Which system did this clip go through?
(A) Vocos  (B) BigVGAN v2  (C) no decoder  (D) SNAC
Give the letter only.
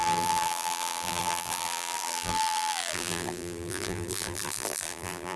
B